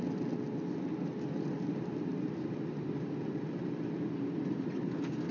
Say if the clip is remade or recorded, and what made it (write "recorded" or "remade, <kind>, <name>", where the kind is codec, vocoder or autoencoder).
recorded